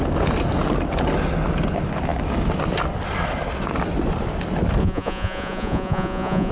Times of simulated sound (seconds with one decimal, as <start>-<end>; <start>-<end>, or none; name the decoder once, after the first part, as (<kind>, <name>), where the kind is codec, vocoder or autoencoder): 4.8-6.5 (vocoder, Vocos)